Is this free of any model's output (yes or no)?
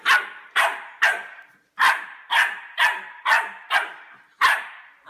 yes